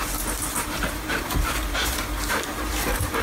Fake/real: fake